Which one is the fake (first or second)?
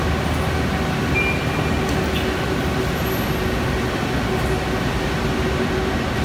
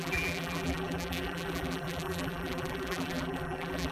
second